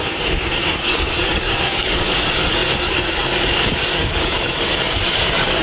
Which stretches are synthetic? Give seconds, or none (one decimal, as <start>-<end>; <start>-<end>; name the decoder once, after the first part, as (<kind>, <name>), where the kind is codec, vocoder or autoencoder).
0.0-5.6 (codec, DAC)